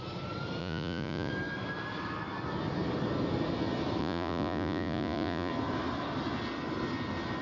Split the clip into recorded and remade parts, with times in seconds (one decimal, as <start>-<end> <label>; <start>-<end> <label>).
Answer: 0.0-0.6 recorded; 0.6-1.3 remade; 1.3-4.0 recorded; 4.0-5.5 remade; 5.5-7.4 recorded